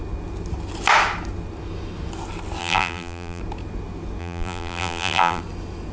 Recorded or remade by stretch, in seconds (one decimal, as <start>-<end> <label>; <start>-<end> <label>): 0.0-2.6 recorded; 2.6-3.4 remade; 3.4-4.2 recorded; 4.2-5.4 remade; 5.4-5.9 recorded